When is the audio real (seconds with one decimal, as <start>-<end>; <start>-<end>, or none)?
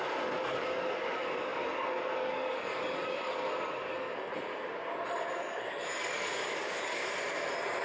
4.3-5.2; 7.0-7.8